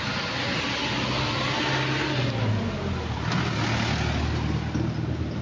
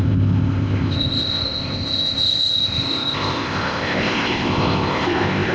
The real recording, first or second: first